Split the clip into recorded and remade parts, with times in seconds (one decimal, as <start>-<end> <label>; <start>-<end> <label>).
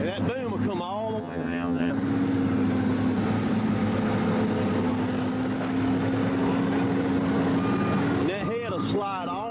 0.0-1.2 recorded; 1.2-1.9 remade; 1.9-9.5 recorded